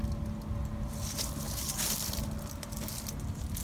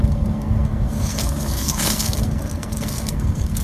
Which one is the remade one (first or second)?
second